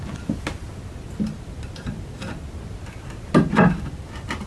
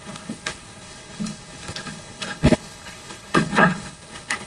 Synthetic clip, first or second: second